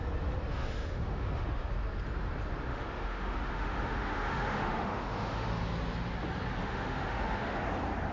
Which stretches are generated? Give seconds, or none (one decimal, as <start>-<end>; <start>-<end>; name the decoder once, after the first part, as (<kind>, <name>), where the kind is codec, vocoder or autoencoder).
0.5-1.7 (autoencoder, DAC-VAE); 2.7-5.6; 6.6-7.6

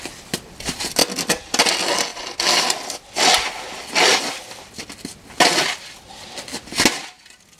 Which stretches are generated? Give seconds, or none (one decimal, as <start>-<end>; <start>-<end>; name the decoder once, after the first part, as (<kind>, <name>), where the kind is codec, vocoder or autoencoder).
none

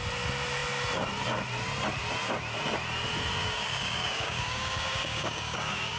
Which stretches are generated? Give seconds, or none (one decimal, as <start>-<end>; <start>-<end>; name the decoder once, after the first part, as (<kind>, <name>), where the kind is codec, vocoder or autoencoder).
3.4-6.0 (codec, DAC)

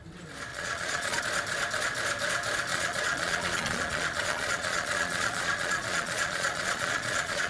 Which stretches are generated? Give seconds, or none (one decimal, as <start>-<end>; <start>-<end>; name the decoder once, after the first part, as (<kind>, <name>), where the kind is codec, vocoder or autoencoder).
0.5-1.2 (vocoder, Vocos); 2.7-7.5